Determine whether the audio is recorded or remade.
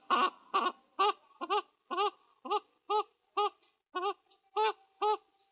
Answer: recorded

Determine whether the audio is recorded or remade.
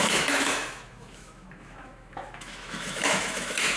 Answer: remade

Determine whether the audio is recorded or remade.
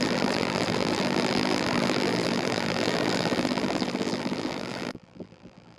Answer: remade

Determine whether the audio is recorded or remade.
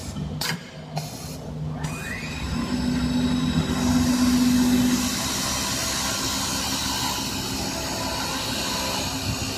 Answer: recorded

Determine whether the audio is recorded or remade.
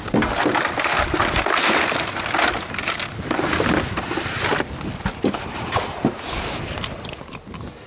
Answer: recorded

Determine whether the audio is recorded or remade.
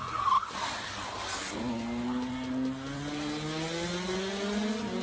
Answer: recorded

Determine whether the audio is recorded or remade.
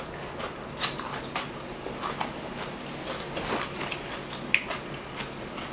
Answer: recorded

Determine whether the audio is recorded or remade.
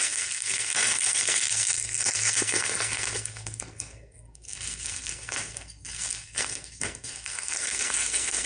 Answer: remade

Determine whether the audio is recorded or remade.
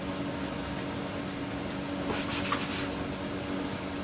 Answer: recorded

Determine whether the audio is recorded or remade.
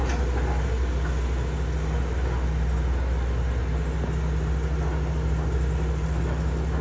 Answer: recorded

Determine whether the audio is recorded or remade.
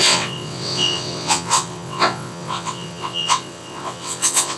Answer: remade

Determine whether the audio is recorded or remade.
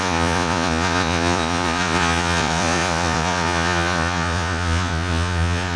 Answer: remade